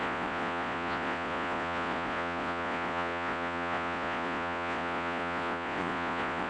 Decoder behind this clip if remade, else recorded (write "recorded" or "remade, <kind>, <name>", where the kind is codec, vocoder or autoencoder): remade, vocoder, Vocos